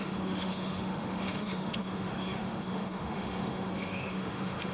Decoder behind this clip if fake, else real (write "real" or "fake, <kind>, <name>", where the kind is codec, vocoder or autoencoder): fake, autoencoder, DAC-VAE